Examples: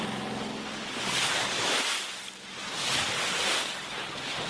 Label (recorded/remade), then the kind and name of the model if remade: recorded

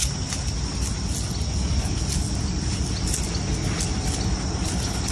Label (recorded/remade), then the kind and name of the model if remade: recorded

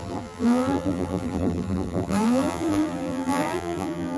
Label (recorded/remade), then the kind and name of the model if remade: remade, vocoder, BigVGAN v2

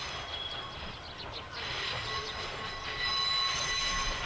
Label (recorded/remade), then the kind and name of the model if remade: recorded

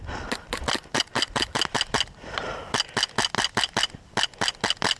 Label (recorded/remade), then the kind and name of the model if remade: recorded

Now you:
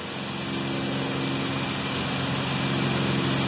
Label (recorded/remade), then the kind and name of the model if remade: recorded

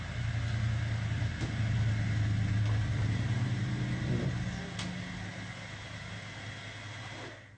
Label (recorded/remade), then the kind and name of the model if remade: recorded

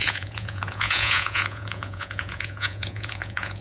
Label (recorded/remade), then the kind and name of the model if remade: remade, vocoder, Vocos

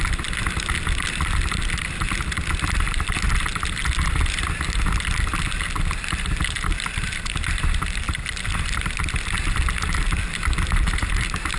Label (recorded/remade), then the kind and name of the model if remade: recorded